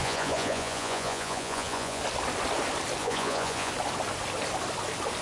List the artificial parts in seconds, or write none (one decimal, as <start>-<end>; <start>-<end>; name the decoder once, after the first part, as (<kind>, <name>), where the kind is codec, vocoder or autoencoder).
0.0-2.0 (vocoder, Vocos); 3.0-3.7